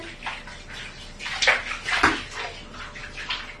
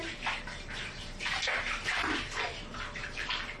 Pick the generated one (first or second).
second